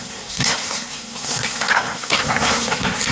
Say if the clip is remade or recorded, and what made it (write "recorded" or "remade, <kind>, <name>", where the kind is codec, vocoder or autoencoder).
remade, codec, SNAC